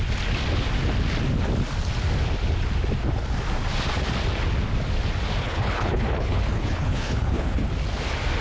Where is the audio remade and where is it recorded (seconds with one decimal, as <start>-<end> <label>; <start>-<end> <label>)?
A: 0.0-5.4 recorded; 5.4-7.7 remade; 7.7-8.4 recorded